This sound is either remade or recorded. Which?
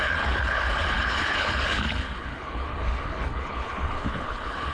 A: remade